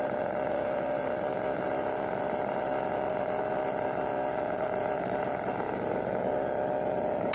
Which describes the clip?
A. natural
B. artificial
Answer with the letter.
B